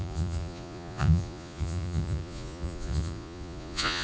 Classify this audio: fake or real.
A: fake